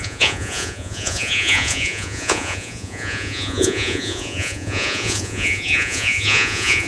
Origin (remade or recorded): remade